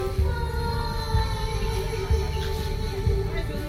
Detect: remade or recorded recorded